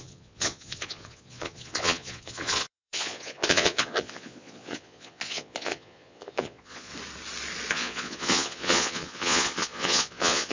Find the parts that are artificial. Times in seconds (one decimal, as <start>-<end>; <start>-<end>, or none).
0.0-6.9; 7.7-10.5